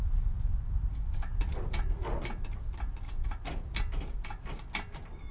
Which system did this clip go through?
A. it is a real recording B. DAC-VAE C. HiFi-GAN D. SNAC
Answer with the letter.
A